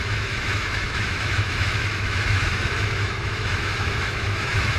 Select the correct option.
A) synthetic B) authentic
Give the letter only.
A